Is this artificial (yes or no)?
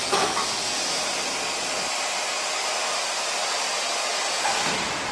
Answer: no